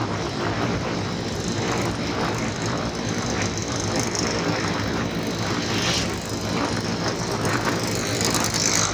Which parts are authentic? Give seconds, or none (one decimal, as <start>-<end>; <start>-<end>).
1.0-8.9